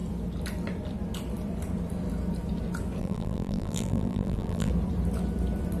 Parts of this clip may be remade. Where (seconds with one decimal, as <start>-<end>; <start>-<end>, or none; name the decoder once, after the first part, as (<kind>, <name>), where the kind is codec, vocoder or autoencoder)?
3.0-4.7 (vocoder, BigVGAN v2)